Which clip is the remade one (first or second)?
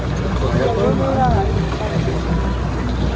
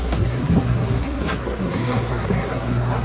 second